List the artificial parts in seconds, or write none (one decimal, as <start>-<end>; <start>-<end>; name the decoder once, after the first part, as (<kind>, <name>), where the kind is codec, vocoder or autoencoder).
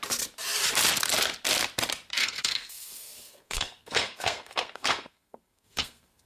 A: 2.2-6.3 (codec, SNAC)